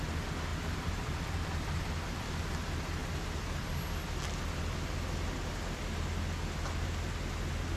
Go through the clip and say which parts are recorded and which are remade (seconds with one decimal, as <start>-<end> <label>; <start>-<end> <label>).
0.0-0.5 recorded; 0.5-2.3 remade; 2.3-7.8 recorded